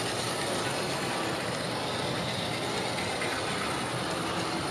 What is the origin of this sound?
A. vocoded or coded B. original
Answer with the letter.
B